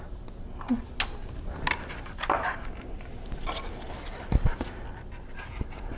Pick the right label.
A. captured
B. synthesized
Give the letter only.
A